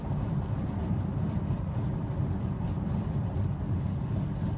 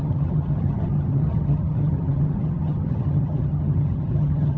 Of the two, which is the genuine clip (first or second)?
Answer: first